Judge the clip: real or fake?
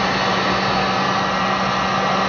real